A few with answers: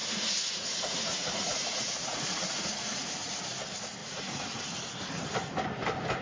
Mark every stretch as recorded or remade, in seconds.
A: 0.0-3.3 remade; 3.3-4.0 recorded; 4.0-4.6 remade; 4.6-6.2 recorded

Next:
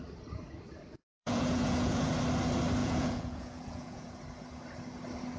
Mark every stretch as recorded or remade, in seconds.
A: 0.0-1.0 recorded; 1.0-2.1 remade; 2.1-2.8 recorded; 2.8-4.1 remade; 4.1-5.4 recorded

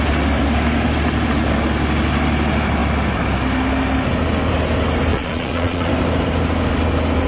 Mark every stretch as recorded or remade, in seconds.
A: 0.0-5.1 recorded; 5.1-5.9 remade; 5.9-7.3 recorded

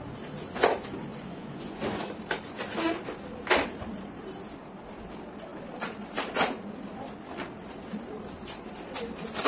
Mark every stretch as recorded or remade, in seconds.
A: 0.0-1.1 recorded; 1.1-2.0 remade; 2.0-9.5 recorded

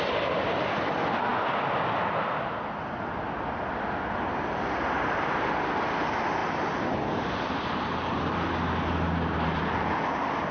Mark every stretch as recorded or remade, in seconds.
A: 0.0-10.5 recorded

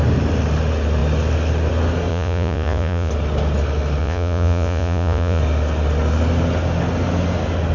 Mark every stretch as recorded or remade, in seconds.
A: 0.0-2.1 recorded; 2.1-3.1 remade; 3.1-4.0 recorded; 4.0-5.4 remade; 5.4-7.7 recorded

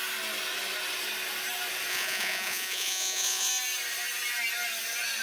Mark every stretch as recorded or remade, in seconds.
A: 0.0-1.9 recorded; 1.9-3.5 remade; 3.5-5.2 recorded